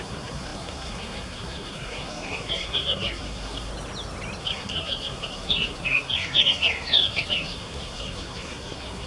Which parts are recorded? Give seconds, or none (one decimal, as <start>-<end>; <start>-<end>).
3.7-4.4